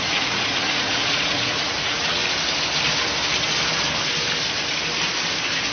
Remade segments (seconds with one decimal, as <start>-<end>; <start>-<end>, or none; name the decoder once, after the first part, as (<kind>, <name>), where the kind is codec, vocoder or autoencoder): 0.0-2.2 (vocoder, Vocos)